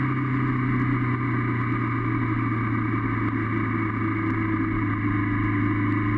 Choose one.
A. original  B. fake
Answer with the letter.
A